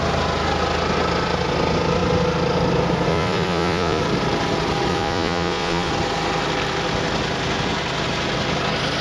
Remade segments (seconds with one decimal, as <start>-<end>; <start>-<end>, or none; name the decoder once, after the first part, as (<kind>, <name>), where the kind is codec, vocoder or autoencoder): 3.1-4.0 (vocoder, Vocos); 4.9-5.9